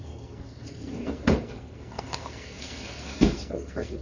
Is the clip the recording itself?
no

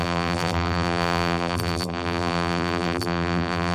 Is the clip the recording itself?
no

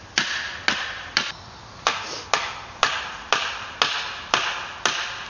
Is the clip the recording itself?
yes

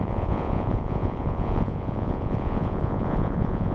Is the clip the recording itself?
no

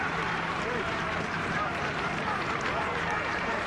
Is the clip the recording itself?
no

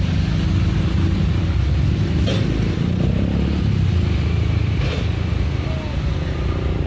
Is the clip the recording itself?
yes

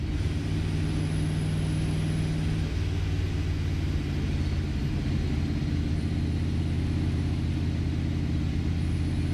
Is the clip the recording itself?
yes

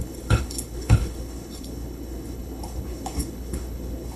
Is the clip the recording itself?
no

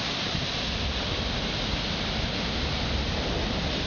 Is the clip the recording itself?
yes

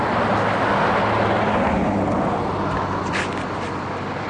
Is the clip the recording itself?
yes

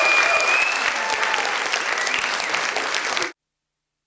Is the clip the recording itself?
yes